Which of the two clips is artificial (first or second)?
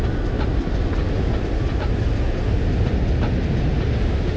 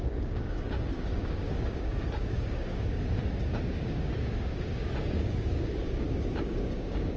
second